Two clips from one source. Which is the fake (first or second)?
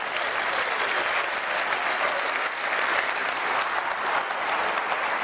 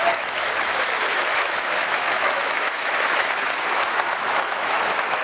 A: second